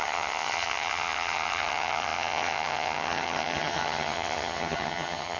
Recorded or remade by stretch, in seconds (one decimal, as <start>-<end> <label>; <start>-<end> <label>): 0.0-5.4 remade